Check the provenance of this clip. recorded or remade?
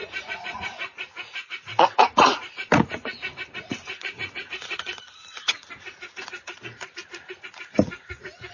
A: remade